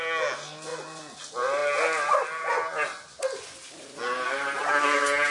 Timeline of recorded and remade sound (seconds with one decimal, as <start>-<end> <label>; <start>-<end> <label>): 0.0-0.7 recorded; 0.7-1.2 remade; 1.2-5.3 recorded